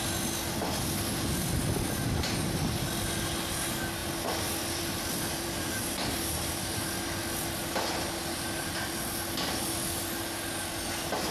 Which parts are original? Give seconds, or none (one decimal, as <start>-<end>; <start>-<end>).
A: 0.0-4.0; 7.0-11.3